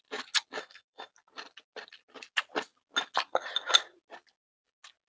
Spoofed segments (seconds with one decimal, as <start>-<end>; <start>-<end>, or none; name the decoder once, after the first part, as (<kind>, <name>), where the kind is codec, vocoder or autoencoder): 0.6-1.1 (codec, SNAC)